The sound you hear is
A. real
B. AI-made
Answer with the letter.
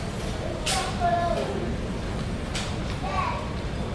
A